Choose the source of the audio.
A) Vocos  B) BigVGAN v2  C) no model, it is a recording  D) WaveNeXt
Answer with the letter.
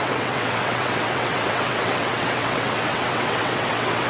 D